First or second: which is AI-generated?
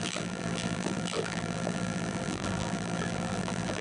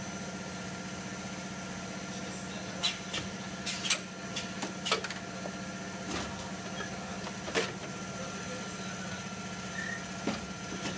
first